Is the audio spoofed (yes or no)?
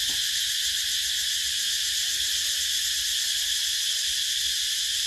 no